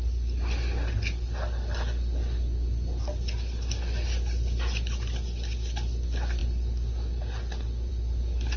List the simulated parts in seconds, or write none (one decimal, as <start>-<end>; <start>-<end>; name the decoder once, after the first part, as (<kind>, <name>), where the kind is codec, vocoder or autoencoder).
none